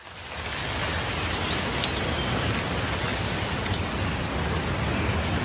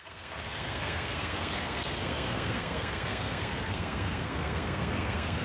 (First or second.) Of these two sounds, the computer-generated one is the second